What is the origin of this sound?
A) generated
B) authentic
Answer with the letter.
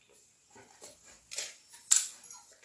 B